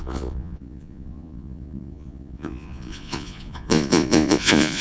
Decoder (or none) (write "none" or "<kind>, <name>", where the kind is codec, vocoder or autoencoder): vocoder, Vocos